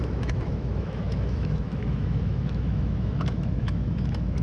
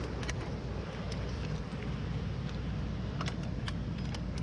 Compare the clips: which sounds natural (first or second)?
second